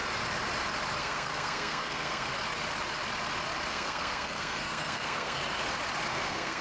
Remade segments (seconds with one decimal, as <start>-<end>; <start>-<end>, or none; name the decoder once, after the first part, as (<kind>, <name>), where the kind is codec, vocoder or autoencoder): 1.0-2.3 (codec, SNAC); 3.7-5.4; 6.1-6.6